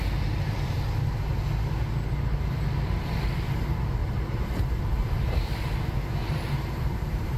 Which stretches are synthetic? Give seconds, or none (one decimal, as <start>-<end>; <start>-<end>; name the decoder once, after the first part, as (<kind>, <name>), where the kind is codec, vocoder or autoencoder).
4.0-7.4 (vocoder, BigVGAN v2)